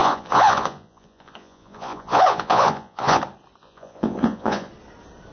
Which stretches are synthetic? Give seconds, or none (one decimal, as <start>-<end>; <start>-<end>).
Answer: 0.0-3.2; 3.6-4.7

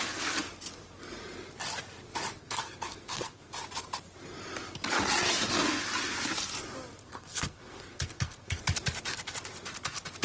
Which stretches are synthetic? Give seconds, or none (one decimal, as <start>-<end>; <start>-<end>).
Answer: 2.4-3.5; 7.0-8.6

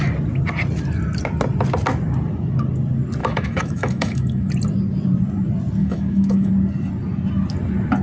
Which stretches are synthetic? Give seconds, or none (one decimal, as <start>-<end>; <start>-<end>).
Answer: 3.2-4.5; 5.8-6.5

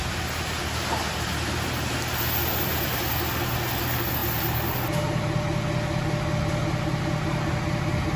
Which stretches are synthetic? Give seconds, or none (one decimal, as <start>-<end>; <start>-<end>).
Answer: none

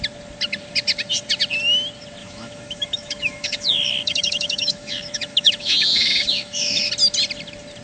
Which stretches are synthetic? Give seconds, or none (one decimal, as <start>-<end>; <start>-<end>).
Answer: 2.2-6.9